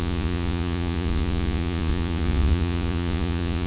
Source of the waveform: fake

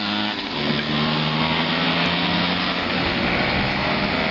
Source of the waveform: real